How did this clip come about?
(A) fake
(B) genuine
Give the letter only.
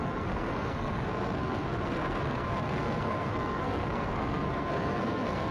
A